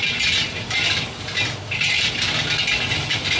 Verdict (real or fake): real